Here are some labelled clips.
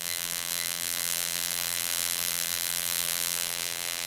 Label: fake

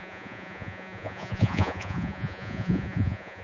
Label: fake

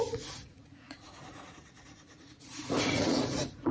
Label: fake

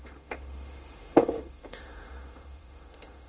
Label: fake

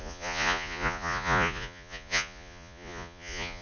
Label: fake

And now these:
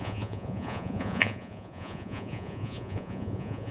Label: fake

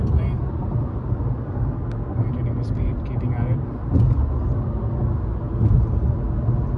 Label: real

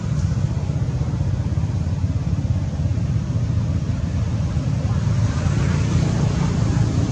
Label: real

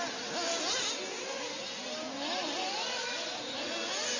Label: real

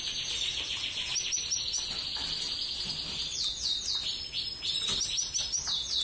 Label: real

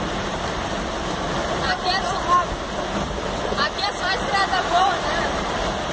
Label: fake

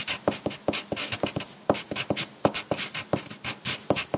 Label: real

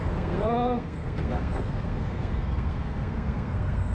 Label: fake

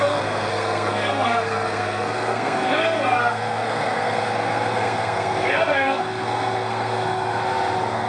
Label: fake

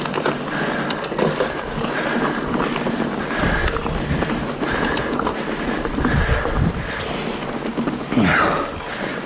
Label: real